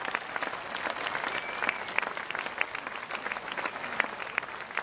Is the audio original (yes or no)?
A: yes